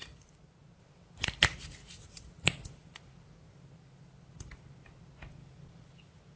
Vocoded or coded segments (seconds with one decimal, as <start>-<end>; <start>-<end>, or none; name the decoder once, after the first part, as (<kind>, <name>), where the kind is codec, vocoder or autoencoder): none